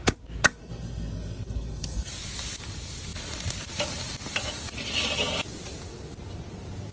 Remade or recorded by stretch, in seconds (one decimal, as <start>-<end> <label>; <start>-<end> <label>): 0.0-0.6 recorded; 0.6-2.1 remade; 2.1-6.9 recorded